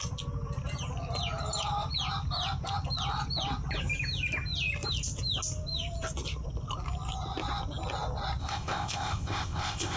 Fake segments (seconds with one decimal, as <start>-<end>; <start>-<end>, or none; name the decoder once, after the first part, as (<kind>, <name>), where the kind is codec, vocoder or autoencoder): 8.4-10.0 (codec, ZipCodec)